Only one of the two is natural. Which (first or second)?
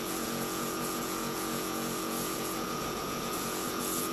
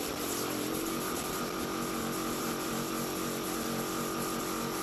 second